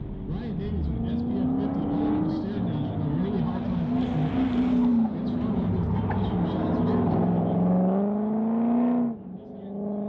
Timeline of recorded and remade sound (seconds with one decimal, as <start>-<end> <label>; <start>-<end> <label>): 0.0-10.1 recorded